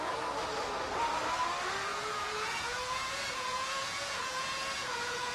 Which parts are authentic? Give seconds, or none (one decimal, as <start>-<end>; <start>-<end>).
0.0-1.9